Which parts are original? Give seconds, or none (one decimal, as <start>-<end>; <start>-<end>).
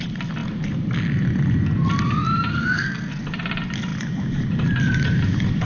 0.0-2.5; 3.1-5.6